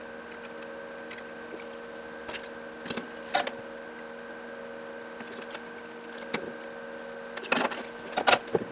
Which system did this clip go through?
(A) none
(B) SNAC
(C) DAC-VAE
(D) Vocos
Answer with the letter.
A